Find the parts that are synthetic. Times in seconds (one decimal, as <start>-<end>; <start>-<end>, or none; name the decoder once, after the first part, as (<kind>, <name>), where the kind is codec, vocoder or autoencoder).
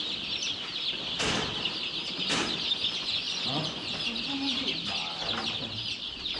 2.8-4.0 (vocoder, Vocos)